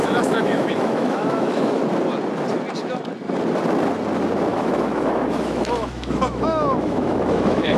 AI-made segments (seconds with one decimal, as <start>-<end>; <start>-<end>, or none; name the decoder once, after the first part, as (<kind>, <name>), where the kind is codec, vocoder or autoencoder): 0.0-1.8 (autoencoder, DAC-VAE); 4.5-7.8